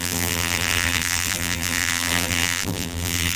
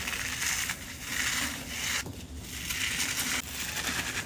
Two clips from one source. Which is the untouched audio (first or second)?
second